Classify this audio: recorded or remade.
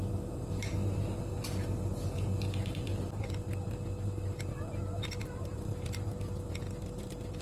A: recorded